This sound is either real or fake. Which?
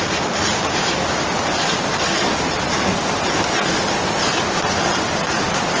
real